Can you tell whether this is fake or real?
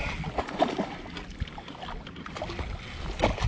real